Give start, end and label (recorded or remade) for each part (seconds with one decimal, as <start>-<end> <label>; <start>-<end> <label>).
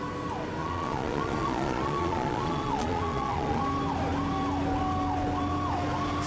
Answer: 0.0-0.6 recorded; 0.6-3.6 remade; 3.6-6.3 recorded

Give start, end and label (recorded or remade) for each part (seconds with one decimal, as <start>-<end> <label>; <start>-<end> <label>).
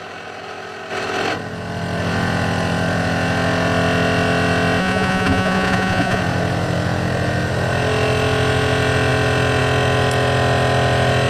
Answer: 0.0-4.8 recorded; 4.8-6.2 remade; 6.2-11.3 recorded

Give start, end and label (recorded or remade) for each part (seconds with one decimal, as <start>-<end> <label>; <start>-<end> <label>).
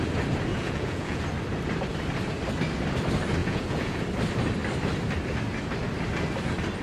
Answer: 0.0-0.5 recorded; 0.5-1.2 remade; 1.2-3.4 recorded; 3.4-4.0 remade; 4.0-6.8 recorded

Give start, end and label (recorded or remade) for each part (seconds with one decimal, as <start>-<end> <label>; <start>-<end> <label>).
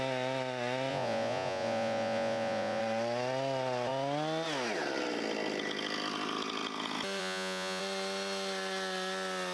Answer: 0.0-0.9 recorded; 0.9-2.8 remade; 2.8-7.2 recorded; 7.2-7.8 remade; 7.8-9.5 recorded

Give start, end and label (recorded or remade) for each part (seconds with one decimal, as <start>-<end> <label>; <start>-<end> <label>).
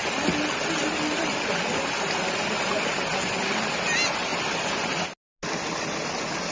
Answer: 0.0-6.5 recorded